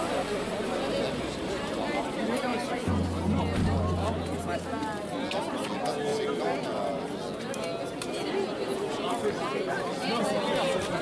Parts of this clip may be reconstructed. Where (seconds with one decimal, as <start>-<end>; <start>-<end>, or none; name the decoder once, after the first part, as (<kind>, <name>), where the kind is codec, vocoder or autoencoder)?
none